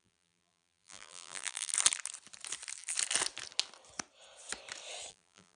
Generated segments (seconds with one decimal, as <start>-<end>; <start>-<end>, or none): 0.0-1.7; 5.1-5.6